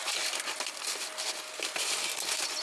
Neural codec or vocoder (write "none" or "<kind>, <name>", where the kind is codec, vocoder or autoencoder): none